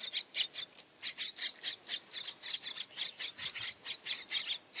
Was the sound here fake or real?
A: real